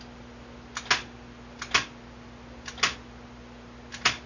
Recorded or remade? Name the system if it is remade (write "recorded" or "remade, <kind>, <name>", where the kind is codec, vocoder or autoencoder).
recorded